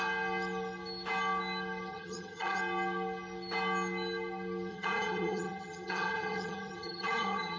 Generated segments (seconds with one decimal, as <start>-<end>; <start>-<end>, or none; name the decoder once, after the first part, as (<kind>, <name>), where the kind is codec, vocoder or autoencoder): 1.9-2.6 (vocoder, HiFi-GAN); 4.7-7.6